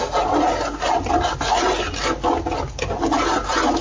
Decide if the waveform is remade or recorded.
recorded